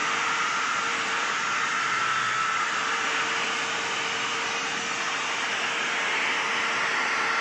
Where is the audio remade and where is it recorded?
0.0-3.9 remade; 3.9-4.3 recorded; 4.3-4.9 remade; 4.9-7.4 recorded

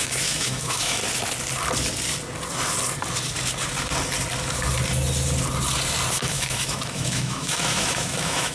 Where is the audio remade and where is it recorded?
0.0-1.0 remade; 1.0-6.1 recorded; 6.1-8.5 remade